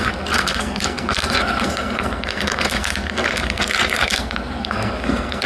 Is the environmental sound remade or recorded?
remade